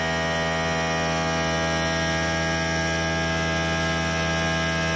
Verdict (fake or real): real